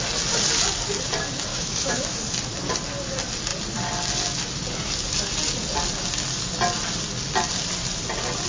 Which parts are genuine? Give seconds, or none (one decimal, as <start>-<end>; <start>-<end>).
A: 0.0-1.5; 2.2-8.5

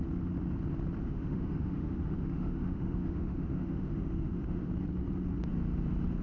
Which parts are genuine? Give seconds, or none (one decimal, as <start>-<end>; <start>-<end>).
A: 0.0-1.0; 4.7-6.2

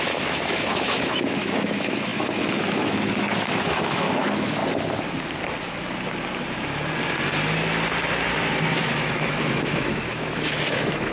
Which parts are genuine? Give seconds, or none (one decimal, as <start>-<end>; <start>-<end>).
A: 4.6-8.8

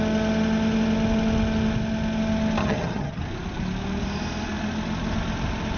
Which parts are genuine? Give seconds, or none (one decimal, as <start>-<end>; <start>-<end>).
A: 0.0-2.6; 3.2-5.8

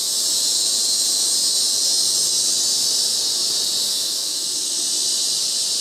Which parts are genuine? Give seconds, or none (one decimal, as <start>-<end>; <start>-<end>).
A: 0.0-3.9; 4.7-5.8

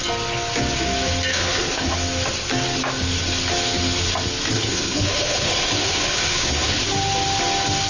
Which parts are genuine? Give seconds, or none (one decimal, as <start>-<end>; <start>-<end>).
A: 0.0-1.3; 1.9-4.5; 6.8-7.9

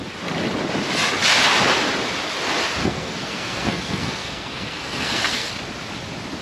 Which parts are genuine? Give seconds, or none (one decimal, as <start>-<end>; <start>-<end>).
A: 0.0-2.8; 5.5-6.4